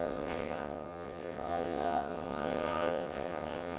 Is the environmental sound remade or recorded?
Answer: remade